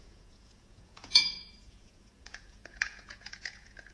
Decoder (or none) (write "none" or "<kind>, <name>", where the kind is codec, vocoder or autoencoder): vocoder, Vocos